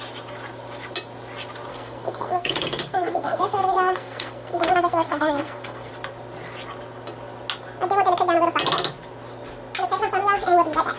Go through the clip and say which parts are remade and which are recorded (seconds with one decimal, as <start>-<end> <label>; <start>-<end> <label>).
0.0-1.7 recorded; 1.7-5.9 remade; 5.9-11.0 recorded